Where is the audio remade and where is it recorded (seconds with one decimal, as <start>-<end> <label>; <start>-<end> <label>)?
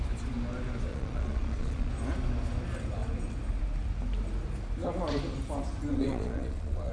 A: 0.0-0.9 recorded; 0.9-1.9 remade; 1.9-5.9 recorded; 5.9-6.9 remade